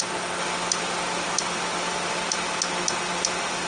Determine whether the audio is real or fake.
real